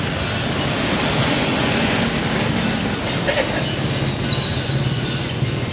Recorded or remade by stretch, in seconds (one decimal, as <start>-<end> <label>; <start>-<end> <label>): 0.0-1.2 recorded; 1.2-2.0 remade; 2.0-4.5 recorded; 4.5-5.7 remade